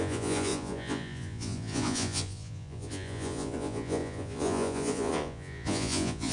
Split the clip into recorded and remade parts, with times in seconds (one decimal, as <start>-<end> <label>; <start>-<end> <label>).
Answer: 0.0-6.3 remade